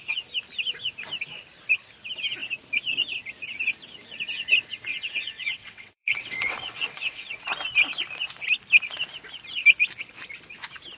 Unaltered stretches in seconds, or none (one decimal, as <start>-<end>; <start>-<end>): 0.0-4.9; 7.4-11.0